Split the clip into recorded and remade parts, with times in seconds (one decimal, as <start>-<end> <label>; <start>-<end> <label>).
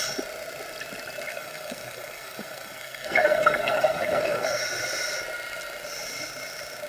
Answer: 0.0-1.3 recorded; 1.3-4.6 remade; 4.6-6.9 recorded